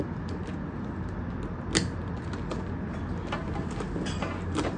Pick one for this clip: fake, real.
real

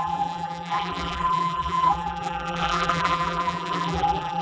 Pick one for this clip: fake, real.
fake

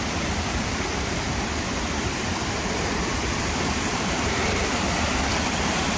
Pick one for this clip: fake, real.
fake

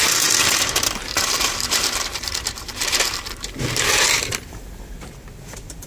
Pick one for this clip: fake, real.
fake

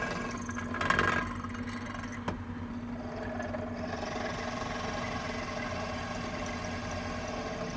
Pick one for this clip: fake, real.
real